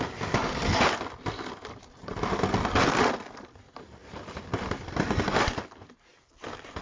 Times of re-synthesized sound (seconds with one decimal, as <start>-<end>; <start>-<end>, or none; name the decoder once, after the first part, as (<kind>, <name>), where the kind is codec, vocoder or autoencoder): 4.0-5.6 (vocoder, BigVGAN v2)